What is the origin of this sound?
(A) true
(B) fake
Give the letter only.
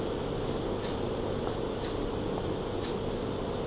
A